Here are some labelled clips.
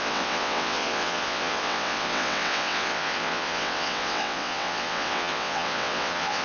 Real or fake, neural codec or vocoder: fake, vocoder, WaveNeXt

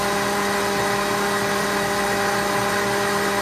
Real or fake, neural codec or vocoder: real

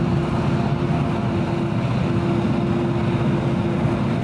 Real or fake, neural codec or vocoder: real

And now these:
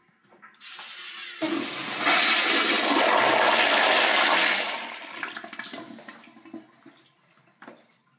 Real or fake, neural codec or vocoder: real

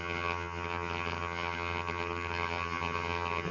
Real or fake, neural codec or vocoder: fake, vocoder, HiFi-GAN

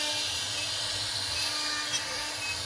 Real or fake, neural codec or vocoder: real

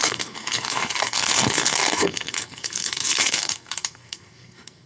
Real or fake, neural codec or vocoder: fake, codec, SNAC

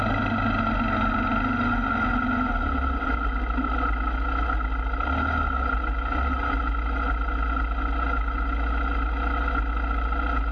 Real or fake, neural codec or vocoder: real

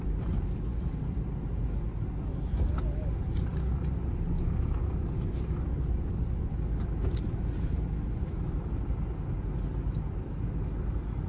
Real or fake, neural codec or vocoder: real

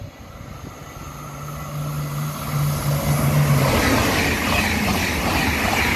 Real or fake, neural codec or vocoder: real